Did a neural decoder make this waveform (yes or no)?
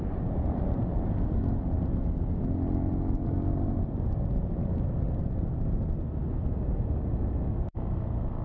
no